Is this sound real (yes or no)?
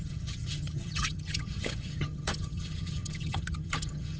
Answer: no